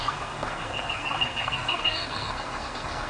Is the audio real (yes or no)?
no